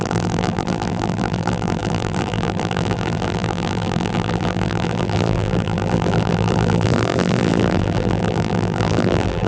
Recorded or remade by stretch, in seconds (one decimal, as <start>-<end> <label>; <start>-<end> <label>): 0.0-9.5 remade